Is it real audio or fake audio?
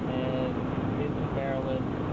real